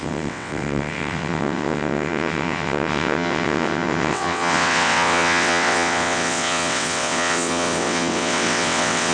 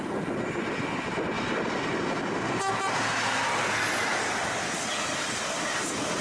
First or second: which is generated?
first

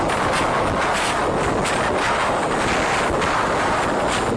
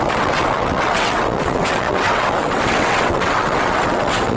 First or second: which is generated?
second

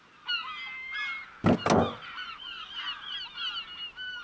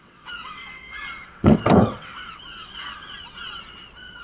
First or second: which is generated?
second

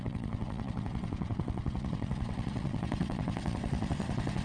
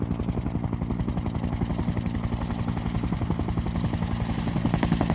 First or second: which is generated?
first